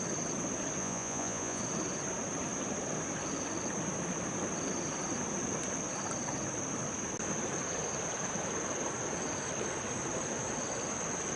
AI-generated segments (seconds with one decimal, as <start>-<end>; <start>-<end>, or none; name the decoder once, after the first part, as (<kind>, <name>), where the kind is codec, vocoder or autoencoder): 0.8-1.6 (vocoder, Vocos)